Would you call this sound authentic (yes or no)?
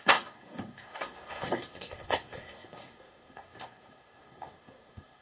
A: no